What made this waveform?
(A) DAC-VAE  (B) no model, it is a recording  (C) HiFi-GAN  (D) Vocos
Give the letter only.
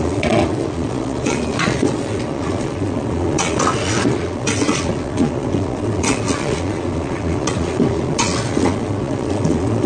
D